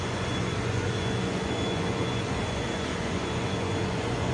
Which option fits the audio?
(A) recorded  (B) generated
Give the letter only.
B